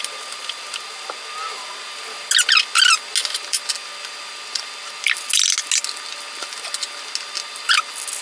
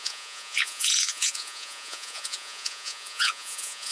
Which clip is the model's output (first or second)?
second